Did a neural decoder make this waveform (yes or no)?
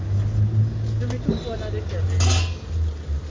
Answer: no